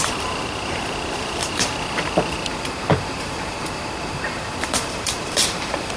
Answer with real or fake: fake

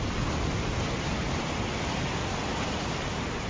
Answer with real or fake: real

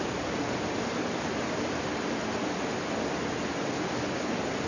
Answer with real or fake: real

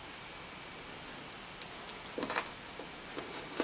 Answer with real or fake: real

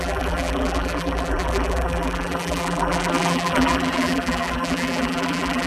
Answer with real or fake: fake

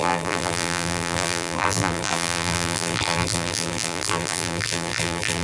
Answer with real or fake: fake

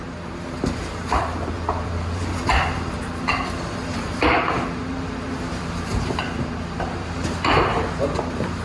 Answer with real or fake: fake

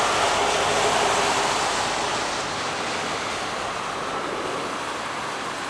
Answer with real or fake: real